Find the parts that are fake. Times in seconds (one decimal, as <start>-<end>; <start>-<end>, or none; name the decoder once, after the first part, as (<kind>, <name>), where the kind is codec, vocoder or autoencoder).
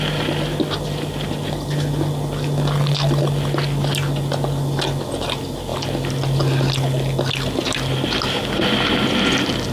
none